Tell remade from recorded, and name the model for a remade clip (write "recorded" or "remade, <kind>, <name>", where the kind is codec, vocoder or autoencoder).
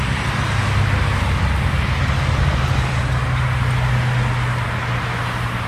recorded